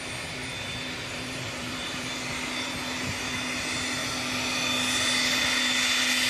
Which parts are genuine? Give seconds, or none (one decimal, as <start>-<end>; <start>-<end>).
0.0-0.4; 2.7-6.3

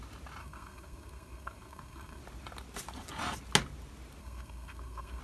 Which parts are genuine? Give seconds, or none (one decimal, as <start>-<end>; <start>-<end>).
0.0-0.4; 2.2-4.2